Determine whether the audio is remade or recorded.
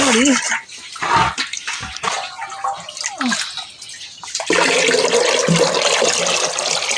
recorded